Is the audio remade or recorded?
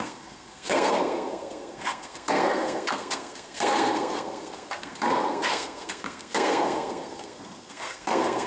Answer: remade